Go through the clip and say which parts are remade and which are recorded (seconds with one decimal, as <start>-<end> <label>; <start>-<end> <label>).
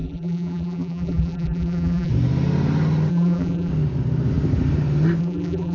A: 0.0-2.1 remade; 2.1-3.1 recorded; 3.1-3.7 remade; 3.7-5.2 recorded; 5.2-5.7 remade